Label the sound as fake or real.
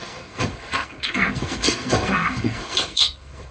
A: fake